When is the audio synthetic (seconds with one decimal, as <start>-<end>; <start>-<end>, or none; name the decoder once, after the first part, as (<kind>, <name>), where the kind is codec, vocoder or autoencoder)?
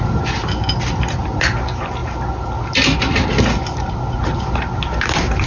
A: none